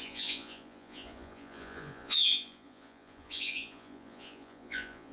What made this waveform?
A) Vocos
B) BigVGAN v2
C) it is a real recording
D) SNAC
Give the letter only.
A